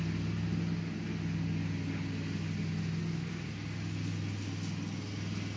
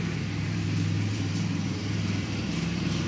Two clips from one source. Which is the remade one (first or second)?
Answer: second